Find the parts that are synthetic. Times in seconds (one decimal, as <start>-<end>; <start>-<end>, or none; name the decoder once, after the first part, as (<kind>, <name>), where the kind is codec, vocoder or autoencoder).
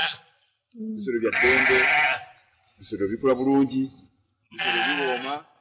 none